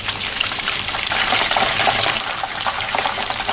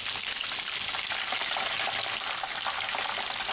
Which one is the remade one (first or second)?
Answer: first